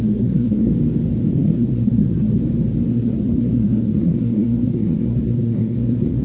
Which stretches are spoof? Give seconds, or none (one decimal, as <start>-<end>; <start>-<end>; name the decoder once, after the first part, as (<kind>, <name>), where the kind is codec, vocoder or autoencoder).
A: 0.0-0.7 (codec, SNAC); 1.3-2.4; 2.9-6.2

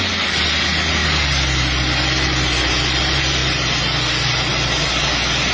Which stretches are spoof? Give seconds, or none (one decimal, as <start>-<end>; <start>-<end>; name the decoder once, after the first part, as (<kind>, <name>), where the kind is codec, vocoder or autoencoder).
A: none

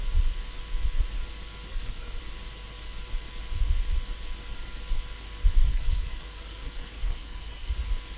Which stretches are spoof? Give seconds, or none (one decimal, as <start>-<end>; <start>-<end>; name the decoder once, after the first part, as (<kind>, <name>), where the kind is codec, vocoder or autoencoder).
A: 1.7-2.2 (codec, SNAC); 5.7-7.7

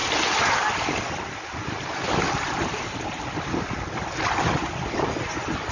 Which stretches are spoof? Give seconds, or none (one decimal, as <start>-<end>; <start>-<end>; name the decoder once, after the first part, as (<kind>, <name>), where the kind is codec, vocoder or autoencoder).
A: none

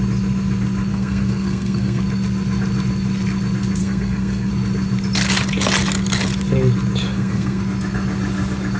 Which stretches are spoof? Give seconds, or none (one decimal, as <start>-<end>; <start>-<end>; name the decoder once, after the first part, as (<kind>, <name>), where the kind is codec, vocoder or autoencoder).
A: 0.9-2.0 (codec, SNAC); 3.8-4.5; 7.1-7.6